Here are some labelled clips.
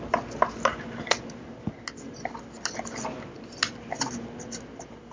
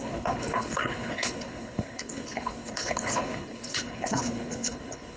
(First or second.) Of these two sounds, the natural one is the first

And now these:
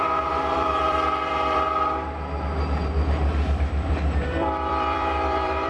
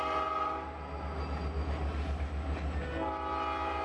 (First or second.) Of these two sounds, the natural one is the second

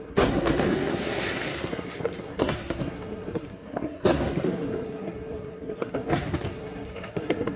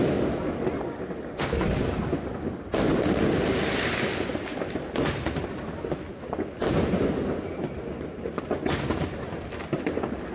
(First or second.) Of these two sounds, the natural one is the second